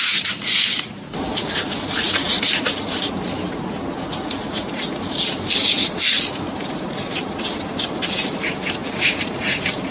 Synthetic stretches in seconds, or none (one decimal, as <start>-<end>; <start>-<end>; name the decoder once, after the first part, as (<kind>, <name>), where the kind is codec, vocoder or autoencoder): none